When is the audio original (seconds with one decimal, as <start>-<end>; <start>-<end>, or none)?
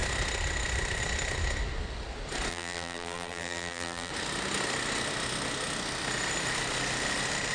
0.0-2.5; 4.1-7.5